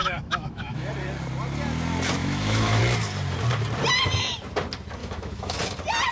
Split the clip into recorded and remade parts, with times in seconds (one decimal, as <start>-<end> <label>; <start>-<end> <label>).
0.0-0.9 remade; 0.9-2.2 recorded; 2.2-2.8 remade; 2.8-5.0 recorded; 5.0-5.6 remade; 5.6-6.1 recorded